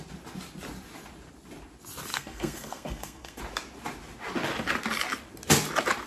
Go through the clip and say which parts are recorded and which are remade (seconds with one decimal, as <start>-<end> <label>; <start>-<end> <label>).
0.0-2.1 recorded; 2.1-3.4 remade; 3.4-6.1 recorded